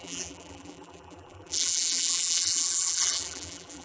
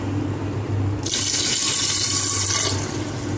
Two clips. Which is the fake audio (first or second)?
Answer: first